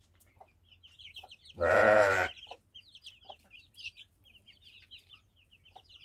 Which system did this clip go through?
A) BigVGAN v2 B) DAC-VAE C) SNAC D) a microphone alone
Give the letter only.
A